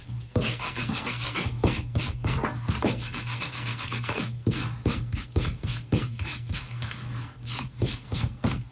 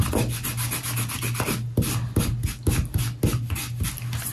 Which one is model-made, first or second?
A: first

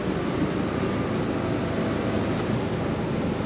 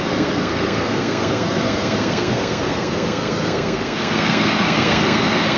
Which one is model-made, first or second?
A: second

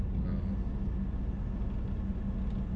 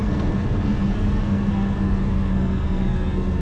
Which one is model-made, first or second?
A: second